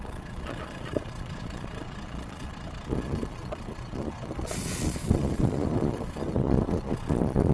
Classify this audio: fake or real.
fake